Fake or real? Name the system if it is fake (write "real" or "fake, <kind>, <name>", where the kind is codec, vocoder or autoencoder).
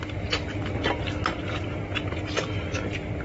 real